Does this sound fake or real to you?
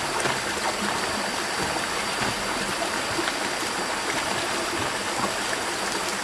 real